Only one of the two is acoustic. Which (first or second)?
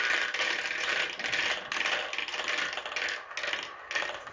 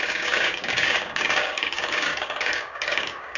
first